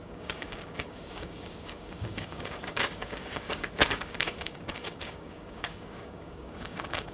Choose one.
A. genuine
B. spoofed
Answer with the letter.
B